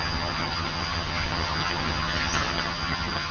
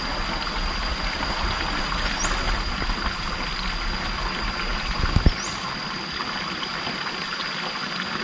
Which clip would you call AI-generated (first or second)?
first